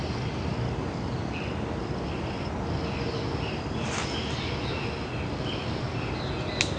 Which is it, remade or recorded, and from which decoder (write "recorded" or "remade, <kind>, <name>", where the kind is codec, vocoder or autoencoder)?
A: recorded